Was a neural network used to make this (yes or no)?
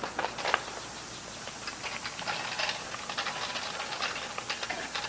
no